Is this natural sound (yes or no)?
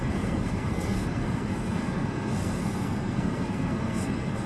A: no